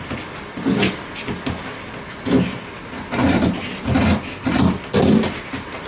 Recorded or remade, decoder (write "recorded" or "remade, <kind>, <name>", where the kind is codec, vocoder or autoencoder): recorded